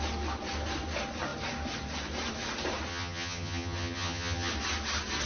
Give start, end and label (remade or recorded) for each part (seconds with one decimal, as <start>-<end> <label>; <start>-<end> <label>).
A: 0.0-2.9 recorded; 2.9-4.5 remade; 4.5-5.3 recorded